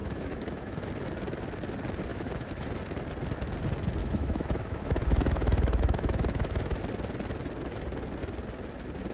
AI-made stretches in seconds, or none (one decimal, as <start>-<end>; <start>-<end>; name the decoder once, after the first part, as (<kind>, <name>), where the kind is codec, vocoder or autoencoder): 0.0-0.9 (autoencoder, DAC-VAE); 2.1-2.7; 4.0-6.8